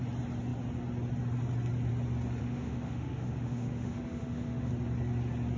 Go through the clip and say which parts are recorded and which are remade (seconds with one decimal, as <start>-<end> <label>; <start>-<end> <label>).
0.0-2.4 recorded; 2.4-4.7 remade; 4.7-5.6 recorded